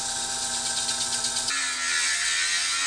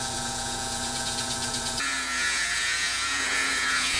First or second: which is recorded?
first